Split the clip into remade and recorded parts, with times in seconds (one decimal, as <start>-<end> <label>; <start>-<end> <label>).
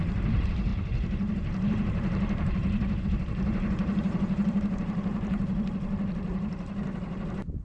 0.0-7.6 remade